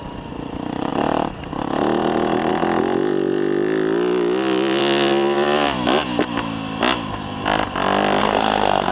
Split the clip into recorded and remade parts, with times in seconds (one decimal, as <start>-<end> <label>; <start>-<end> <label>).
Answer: 0.0-8.2 recorded; 8.2-8.9 remade